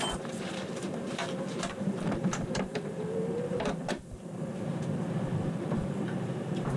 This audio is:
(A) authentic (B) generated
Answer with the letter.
B